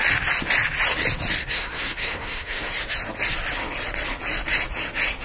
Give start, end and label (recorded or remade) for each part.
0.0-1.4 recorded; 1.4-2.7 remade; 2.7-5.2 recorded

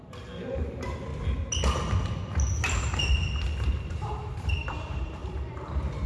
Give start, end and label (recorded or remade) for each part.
0.0-1.1 remade; 1.1-3.6 recorded; 3.6-5.2 remade; 5.2-6.1 recorded

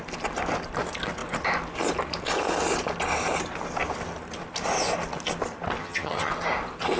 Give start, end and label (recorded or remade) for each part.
0.0-5.8 recorded; 5.8-6.3 remade; 6.3-7.0 recorded

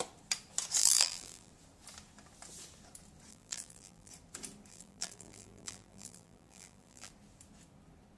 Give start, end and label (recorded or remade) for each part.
0.0-0.8 recorded; 0.8-1.5 remade; 1.5-3.3 recorded; 3.3-4.1 remade; 4.1-4.7 recorded; 4.7-7.1 remade; 7.1-8.2 recorded

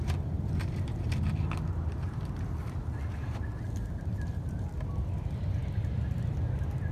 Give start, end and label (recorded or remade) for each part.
0.0-6.9 recorded

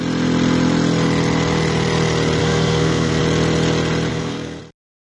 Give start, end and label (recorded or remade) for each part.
0.0-2.4 recorded; 2.4-3.2 remade; 3.2-4.1 recorded; 4.1-4.6 remade; 4.6-5.1 recorded